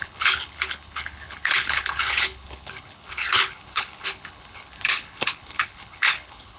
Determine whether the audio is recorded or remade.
remade